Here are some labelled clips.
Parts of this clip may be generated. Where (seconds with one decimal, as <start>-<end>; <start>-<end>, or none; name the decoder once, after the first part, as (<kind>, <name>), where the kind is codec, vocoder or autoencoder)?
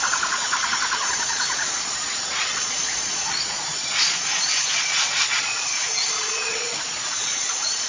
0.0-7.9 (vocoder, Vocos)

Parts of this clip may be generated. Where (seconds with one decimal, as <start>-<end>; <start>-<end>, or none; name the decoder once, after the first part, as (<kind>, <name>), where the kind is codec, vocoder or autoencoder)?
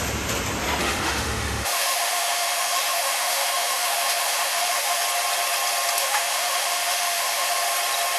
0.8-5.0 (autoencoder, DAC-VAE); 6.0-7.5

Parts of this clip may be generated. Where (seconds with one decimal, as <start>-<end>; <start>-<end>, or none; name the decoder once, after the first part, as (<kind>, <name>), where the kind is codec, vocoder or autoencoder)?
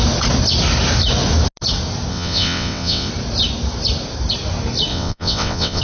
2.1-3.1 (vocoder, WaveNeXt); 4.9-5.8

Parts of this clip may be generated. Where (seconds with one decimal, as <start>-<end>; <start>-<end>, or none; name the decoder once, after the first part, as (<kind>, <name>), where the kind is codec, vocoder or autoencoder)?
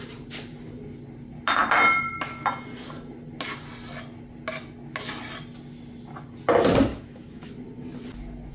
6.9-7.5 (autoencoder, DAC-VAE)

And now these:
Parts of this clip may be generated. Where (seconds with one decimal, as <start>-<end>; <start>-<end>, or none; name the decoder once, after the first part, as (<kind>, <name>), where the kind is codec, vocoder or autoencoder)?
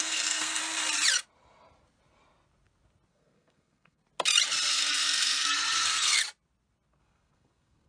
0.0-0.6 (codec, SNAC); 3.1-4.0; 4.7-6.2; 7.0-7.9